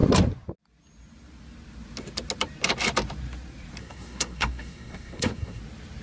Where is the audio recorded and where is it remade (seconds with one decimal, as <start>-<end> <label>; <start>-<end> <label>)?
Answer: 0.0-3.8 recorded; 3.8-5.6 remade; 5.6-6.0 recorded